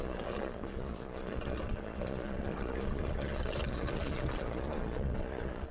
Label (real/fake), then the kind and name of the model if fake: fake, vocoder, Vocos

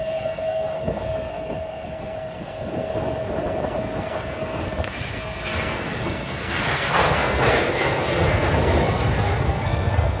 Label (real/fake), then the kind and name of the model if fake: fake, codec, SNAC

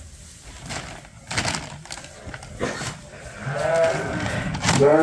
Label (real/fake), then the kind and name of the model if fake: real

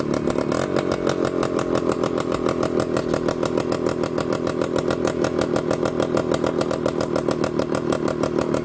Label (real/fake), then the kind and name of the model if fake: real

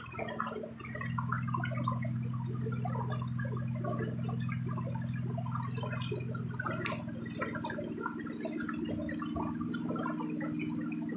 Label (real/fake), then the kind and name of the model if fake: real